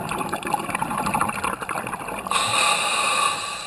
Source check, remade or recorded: recorded